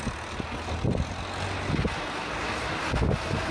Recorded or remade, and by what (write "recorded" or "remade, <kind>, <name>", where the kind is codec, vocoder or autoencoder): recorded